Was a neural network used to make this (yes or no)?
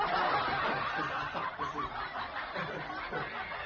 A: no